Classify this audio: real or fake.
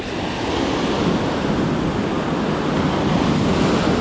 real